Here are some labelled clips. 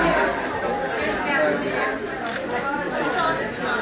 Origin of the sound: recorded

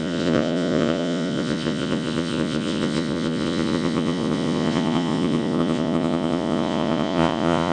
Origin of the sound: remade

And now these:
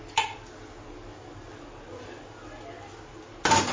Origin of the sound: recorded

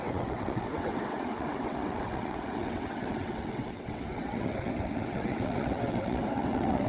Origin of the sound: remade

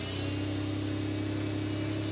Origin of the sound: recorded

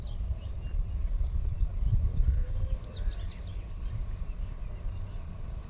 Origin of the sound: recorded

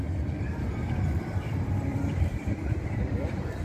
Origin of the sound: remade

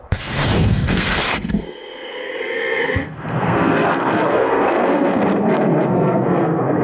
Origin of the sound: remade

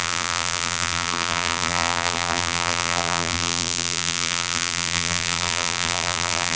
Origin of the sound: remade